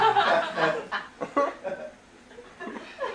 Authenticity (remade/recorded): recorded